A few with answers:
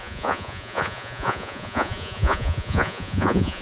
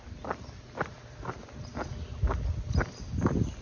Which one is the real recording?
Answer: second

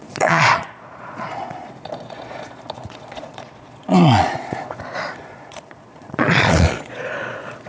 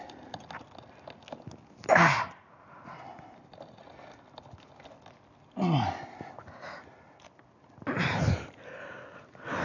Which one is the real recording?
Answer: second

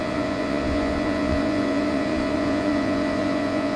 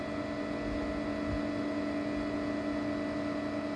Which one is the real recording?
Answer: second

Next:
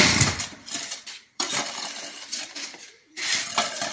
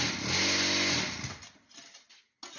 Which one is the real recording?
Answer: second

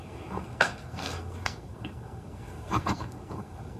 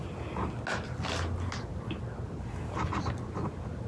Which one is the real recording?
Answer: second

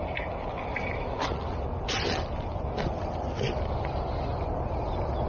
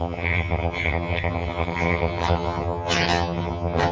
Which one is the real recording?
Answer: first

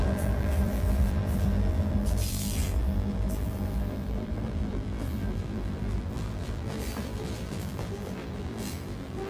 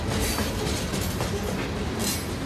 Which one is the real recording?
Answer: second